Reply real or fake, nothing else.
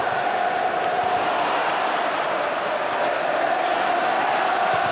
real